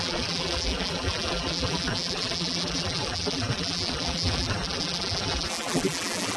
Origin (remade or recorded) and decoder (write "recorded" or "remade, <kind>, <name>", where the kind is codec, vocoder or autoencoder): remade, vocoder, BigVGAN v2